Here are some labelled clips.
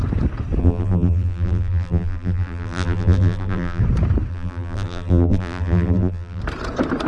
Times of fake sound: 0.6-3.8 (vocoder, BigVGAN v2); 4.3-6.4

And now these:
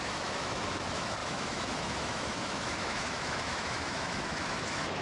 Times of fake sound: 0.0-5.0 (autoencoder, DAC-VAE)